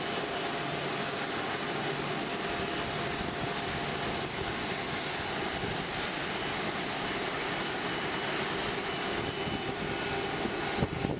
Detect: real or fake real